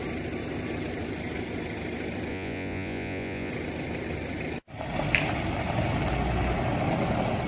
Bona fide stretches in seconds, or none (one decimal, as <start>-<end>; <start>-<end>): 0.0-2.3; 3.5-7.5